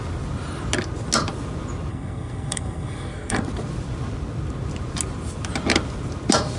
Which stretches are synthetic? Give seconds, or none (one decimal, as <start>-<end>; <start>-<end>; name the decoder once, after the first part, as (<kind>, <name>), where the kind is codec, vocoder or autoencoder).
1.9-3.4 (codec, SNAC)

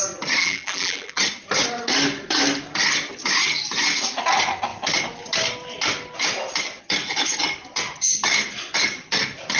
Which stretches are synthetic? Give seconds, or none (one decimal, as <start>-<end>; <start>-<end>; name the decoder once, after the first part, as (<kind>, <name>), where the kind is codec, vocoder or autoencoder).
0.4-1.2 (vocoder, BigVGAN v2)

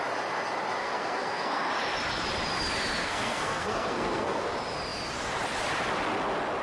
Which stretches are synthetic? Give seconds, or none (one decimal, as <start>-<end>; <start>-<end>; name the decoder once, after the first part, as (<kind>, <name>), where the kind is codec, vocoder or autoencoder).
0.8-1.7 (codec, SNAC); 3.0-4.4

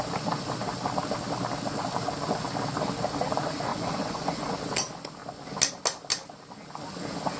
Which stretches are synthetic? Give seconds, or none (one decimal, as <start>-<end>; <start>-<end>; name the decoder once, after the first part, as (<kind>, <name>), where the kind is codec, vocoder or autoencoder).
3.7-4.5 (vocoder, Vocos)

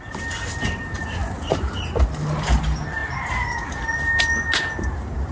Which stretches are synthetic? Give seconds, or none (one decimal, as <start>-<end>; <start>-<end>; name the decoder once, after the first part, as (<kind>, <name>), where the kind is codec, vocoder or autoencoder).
none

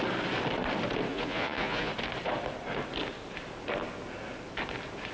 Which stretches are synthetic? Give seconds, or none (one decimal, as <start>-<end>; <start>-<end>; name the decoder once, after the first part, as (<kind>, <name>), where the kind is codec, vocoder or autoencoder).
1.1-1.9 (vocoder, Vocos)

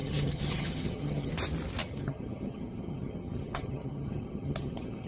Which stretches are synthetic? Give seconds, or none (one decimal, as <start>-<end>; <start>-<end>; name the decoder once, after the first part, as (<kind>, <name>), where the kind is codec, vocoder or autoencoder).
0.0-1.3 (vocoder, HiFi-GAN); 1.8-5.1